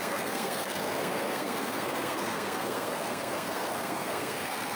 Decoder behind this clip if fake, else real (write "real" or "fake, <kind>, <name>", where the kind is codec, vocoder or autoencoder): fake, codec, SNAC